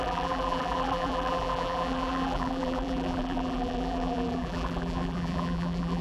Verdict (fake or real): fake